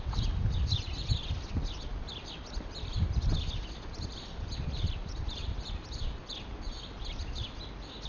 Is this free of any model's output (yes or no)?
yes